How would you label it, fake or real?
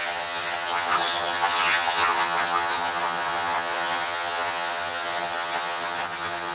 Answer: fake